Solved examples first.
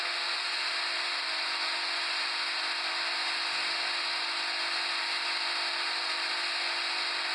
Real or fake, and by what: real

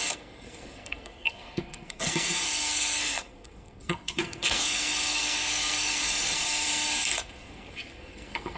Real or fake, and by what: fake, codec, SNAC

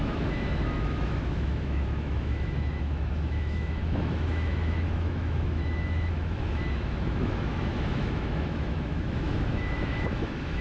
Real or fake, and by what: fake, autoencoder, DAC-VAE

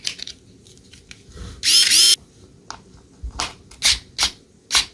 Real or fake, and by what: real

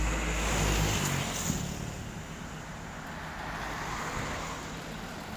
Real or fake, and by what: real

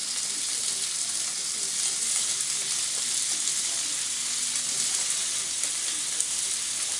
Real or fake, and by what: real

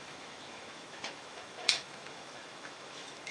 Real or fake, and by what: fake, autoencoder, DAC-VAE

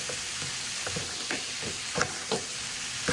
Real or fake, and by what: real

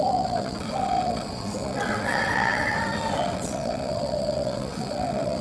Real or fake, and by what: fake, vocoder, WaveNeXt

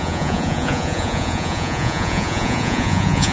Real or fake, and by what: fake, vocoder, Vocos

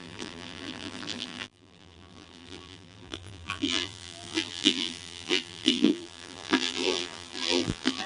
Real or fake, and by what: fake, vocoder, BigVGAN v2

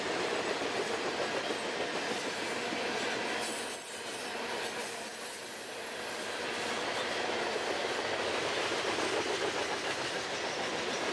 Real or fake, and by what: real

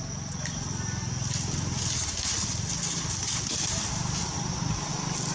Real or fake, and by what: real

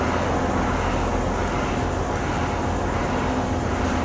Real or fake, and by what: real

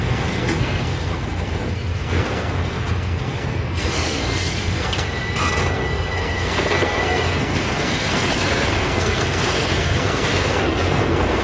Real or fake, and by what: fake, codec, SNAC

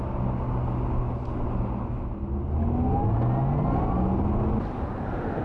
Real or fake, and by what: real